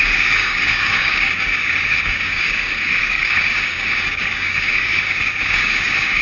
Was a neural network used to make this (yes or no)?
yes